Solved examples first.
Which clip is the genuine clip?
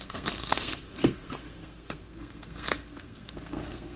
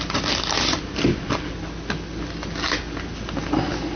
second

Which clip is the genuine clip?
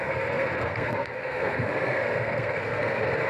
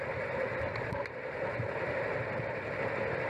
second